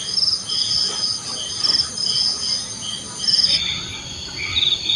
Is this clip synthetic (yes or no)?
no